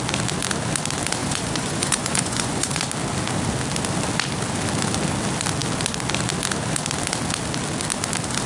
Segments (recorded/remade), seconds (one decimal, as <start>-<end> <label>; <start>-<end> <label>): 0.0-1.2 recorded; 1.2-2.8 remade; 2.8-8.5 recorded